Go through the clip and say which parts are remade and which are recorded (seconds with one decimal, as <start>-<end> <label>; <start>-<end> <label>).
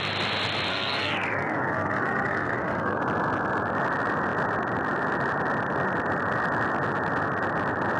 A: 0.0-0.7 recorded; 0.7-3.0 remade; 3.0-8.0 recorded